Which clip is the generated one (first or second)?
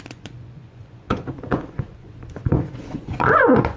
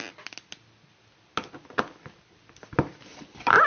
first